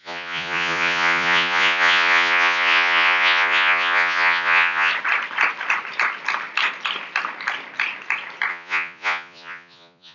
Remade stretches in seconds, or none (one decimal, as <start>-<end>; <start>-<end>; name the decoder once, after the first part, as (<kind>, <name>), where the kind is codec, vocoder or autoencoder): 0.0-4.9 (vocoder, Vocos); 8.5-10.1